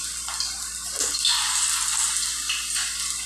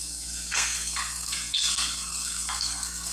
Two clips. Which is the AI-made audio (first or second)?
second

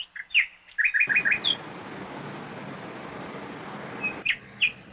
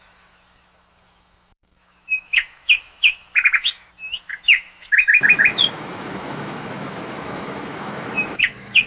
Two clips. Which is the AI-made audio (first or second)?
second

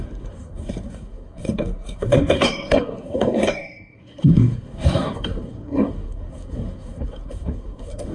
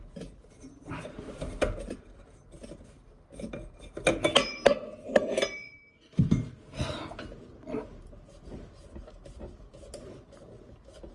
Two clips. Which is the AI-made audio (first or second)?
first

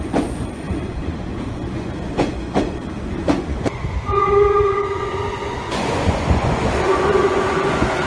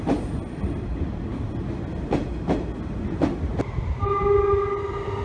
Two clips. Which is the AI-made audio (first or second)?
first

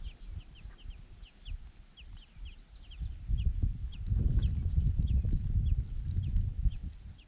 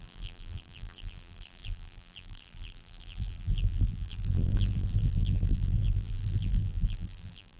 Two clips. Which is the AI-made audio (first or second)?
second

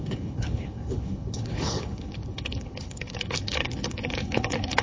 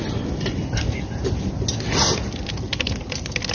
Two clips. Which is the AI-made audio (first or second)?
first